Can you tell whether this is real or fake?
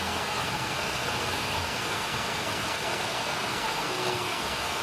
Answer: fake